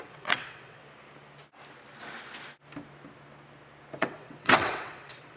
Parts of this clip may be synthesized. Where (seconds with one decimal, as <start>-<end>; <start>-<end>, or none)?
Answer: 0.0-0.8; 4.0-5.4